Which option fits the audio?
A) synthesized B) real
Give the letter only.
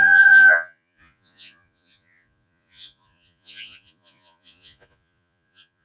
A